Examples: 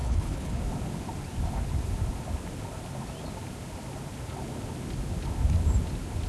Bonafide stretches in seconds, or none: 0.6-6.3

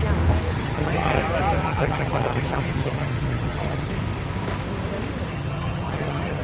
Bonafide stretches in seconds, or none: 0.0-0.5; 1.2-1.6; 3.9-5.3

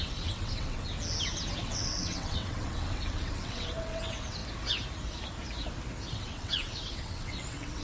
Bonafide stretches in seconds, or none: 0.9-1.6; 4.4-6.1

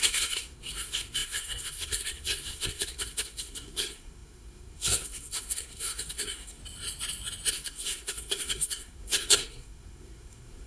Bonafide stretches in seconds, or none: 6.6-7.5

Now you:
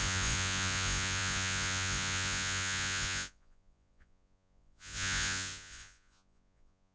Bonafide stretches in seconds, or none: none

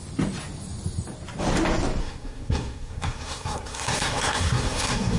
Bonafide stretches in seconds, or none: 0.0-2.0

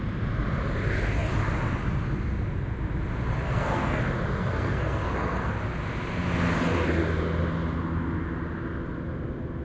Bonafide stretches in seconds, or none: 0.0-3.4; 4.0-4.4; 5.5-9.6

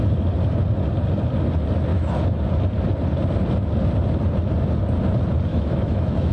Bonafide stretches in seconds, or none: 0.0-1.9; 2.4-5.5